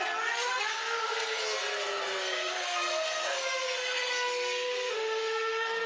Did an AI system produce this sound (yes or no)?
yes